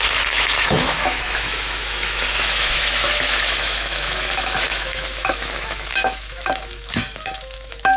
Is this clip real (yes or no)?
no